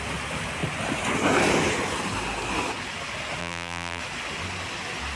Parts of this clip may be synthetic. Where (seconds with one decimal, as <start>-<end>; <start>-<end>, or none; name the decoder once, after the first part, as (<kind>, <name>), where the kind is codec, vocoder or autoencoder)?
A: 3.4-4.0 (vocoder, BigVGAN v2)